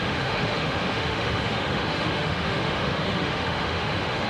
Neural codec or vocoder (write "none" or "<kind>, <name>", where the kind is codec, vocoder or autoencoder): autoencoder, DAC-VAE